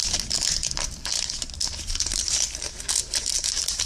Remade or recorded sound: recorded